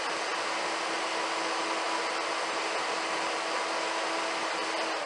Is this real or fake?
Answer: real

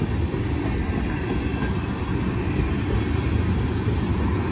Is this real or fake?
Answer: real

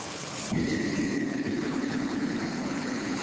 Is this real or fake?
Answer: fake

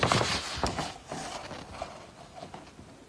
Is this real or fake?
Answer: real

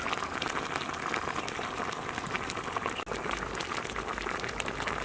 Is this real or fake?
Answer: real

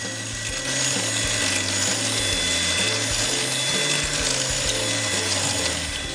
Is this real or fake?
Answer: real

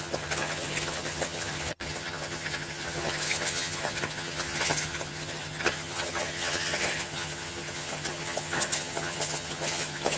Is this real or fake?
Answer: fake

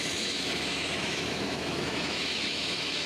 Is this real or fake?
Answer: fake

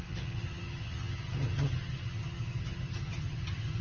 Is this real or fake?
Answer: fake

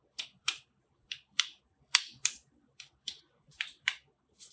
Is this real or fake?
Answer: fake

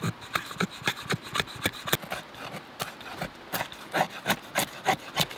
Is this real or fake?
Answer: real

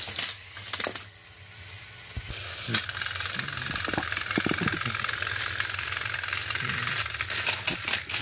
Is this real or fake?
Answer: real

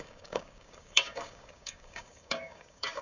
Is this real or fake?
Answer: fake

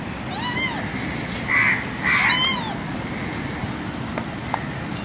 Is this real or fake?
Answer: real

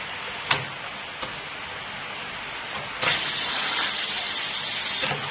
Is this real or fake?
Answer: real